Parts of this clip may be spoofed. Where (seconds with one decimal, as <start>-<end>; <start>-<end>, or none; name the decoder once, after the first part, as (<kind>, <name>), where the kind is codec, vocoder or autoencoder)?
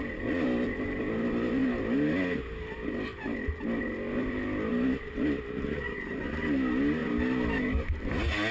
none